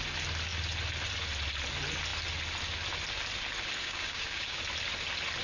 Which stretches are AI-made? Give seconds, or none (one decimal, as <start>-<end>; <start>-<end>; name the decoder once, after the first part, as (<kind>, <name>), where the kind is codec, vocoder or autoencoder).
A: 3.8-4.6 (codec, DAC)